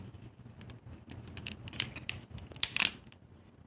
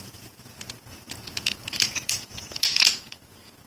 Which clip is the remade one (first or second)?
second